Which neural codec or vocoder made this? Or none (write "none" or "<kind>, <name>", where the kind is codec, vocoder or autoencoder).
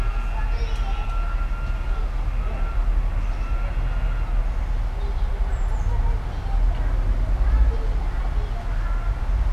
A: none